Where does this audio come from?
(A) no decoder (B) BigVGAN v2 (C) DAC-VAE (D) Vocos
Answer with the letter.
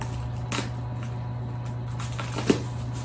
A